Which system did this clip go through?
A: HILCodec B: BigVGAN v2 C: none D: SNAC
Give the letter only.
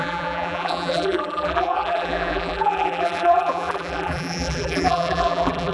B